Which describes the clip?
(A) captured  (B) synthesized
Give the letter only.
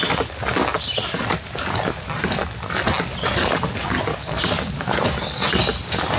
A